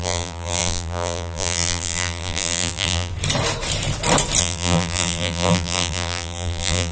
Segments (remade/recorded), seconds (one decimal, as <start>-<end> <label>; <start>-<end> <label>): 0.0-3.1 remade; 3.1-4.4 recorded; 4.4-6.9 remade